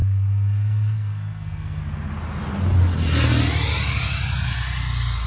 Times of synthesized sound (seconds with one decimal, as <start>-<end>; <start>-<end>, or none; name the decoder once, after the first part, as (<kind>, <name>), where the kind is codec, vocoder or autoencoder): 0.0-1.8 (codec, SNAC)